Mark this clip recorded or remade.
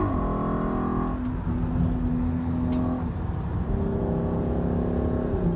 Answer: recorded